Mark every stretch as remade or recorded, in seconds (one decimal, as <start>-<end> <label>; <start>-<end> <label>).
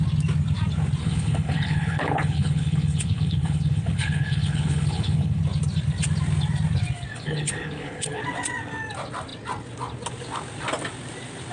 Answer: 0.0-1.0 recorded; 1.0-5.4 remade; 5.4-7.1 recorded; 7.1-8.2 remade; 8.2-11.5 recorded